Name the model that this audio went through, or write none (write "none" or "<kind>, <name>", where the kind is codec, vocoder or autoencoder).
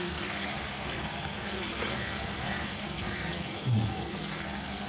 codec, SNAC